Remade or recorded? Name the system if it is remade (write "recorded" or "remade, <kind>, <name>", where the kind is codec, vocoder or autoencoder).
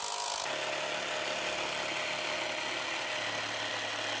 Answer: recorded